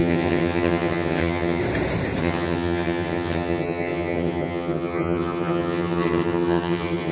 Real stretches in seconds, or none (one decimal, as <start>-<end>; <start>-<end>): 1.6-2.2